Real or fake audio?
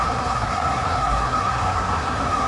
fake